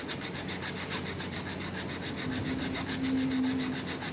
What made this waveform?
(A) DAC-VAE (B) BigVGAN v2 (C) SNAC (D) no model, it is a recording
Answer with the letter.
D